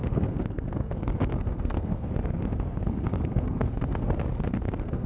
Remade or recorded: remade